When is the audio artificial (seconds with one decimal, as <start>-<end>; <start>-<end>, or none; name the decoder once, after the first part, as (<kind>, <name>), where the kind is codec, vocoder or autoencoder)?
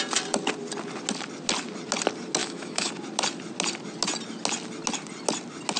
2.4-2.9 (autoencoder, DAC-VAE)